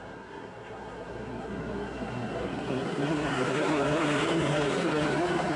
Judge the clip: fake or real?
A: fake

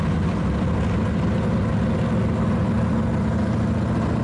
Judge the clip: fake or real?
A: real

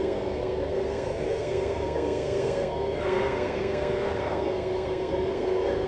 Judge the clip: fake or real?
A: fake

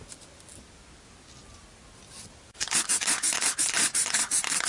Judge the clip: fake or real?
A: real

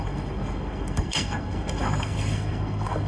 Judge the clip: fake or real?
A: fake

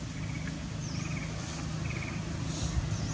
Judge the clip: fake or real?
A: real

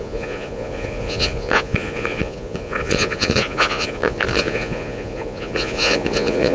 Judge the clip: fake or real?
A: fake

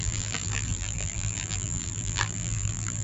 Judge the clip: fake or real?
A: fake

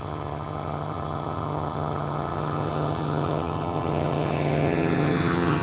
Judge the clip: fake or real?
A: fake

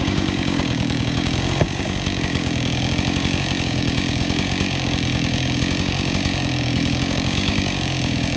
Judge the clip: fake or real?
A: fake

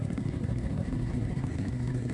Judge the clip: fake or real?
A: fake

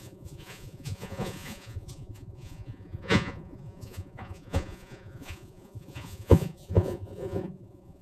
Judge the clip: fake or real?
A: fake